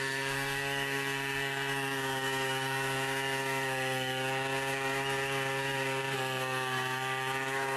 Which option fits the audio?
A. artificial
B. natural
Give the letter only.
A